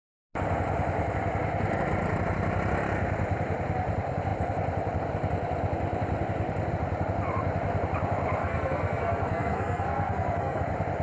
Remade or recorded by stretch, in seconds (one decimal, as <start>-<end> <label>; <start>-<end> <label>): 0.0-8.4 recorded; 8.4-10.6 remade; 10.6-11.0 recorded